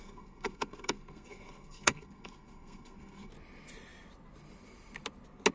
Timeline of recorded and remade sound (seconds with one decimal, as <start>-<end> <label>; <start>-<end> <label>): 0.0-3.3 remade; 3.3-5.5 recorded